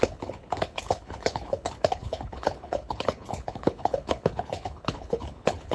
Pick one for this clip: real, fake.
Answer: fake